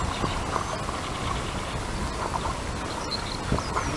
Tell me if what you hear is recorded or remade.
recorded